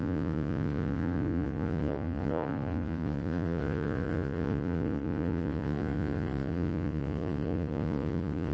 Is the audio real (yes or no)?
no